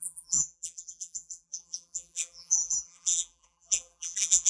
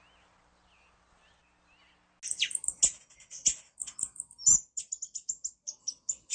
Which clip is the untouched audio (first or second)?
second